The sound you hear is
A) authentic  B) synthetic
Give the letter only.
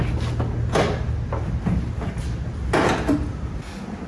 A